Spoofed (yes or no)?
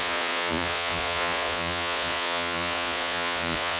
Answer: yes